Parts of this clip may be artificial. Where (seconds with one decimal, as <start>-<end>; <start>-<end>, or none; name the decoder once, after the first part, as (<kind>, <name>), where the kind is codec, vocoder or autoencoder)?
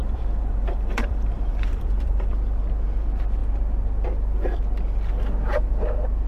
0.0-2.3 (vocoder, BigVGAN v2)